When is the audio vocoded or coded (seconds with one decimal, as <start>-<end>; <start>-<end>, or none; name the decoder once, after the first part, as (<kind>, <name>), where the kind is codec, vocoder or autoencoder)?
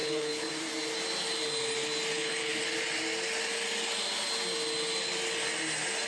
0.0-0.5 (codec, HILCodec); 2.1-2.6